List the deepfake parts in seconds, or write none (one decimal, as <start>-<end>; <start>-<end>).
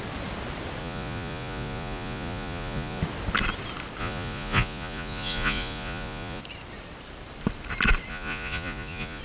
0.8-3.0; 4.0-6.4; 8.1-9.2